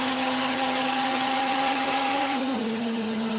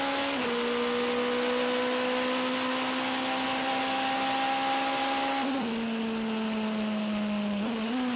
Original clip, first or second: second